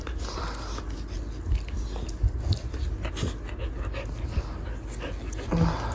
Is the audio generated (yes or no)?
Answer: no